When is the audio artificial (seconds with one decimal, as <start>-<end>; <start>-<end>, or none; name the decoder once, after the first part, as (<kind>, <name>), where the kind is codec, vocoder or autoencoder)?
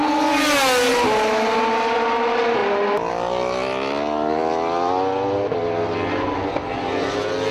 none